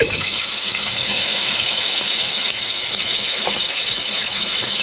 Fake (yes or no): yes